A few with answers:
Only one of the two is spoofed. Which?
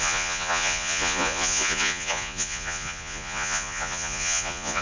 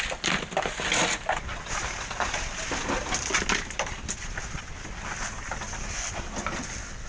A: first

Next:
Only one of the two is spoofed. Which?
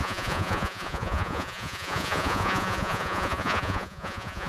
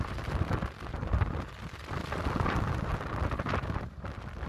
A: first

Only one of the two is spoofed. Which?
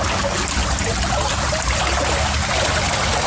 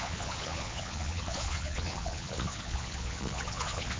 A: second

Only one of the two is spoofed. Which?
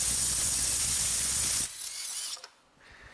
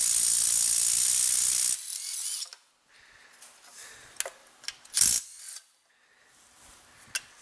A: first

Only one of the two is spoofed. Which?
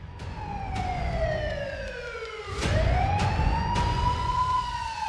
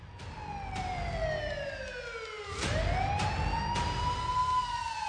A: first